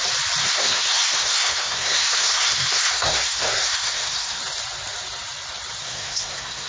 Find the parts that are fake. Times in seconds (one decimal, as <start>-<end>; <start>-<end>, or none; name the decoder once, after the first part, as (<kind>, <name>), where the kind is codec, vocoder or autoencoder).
0.4-4.4 (codec, SNAC); 5.8-6.7